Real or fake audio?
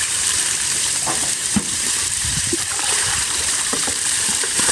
fake